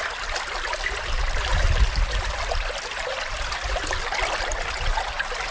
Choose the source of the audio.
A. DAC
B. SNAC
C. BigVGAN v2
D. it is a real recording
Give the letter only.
D